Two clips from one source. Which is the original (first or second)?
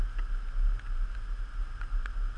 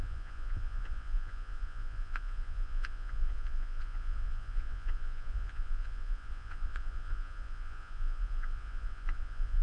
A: first